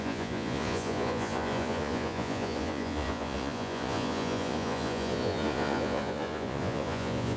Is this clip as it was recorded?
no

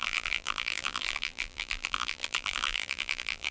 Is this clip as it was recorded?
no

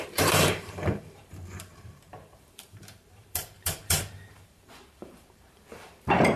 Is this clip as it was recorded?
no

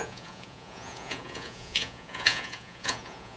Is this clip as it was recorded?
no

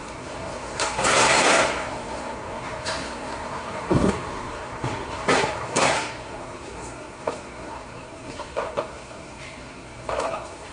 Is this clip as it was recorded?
no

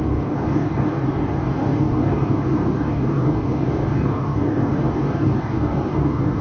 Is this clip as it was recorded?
no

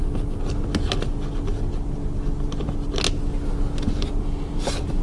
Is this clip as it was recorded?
yes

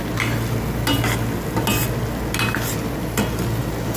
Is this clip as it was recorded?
yes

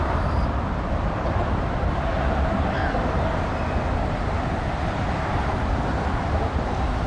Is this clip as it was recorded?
no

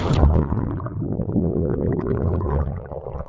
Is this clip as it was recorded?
no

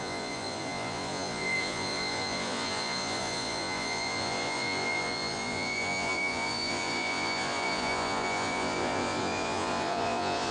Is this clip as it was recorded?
no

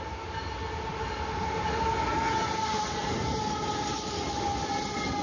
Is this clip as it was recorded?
yes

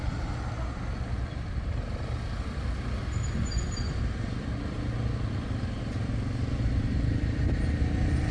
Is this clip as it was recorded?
yes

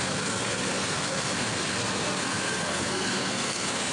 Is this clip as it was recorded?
no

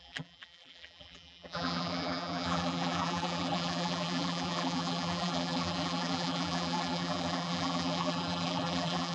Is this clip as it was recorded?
no